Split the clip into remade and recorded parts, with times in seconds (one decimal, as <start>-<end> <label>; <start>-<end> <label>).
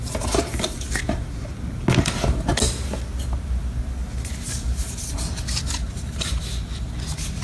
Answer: 0.0-7.4 recorded